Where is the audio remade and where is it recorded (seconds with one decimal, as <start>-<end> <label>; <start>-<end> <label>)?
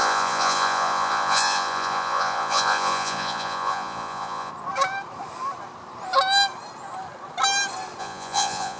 0.0-4.5 remade; 4.5-8.0 recorded; 8.0-8.8 remade